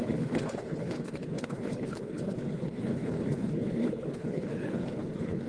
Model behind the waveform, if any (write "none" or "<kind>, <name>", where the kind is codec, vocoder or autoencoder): codec, HILCodec